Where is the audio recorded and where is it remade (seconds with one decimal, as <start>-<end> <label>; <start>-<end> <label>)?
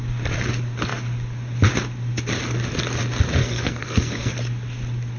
0.0-3.4 recorded; 3.4-4.3 remade; 4.3-5.2 recorded